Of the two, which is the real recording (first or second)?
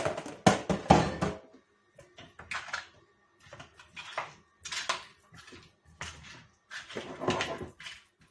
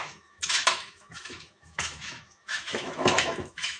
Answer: first